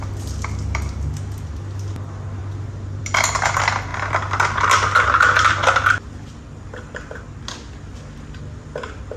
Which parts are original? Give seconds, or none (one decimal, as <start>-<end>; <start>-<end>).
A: 0.0-9.2